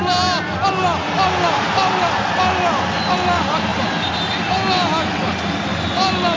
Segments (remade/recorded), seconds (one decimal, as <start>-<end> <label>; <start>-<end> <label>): 0.0-6.4 recorded